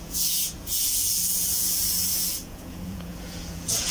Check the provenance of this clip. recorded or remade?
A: remade